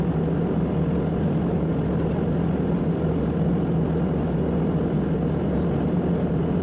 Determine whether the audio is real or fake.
real